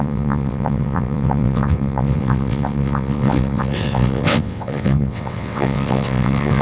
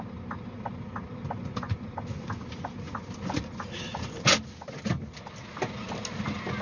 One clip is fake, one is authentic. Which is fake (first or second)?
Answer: first